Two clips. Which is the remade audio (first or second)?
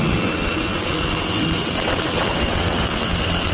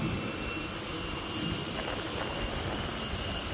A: first